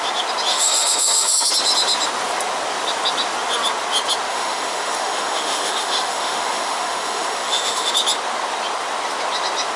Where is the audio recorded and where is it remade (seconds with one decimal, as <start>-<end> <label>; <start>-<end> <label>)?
0.0-0.5 recorded; 0.5-1.5 remade; 1.5-4.3 recorded; 4.3-7.9 remade; 7.9-9.8 recorded